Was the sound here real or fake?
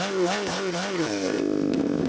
fake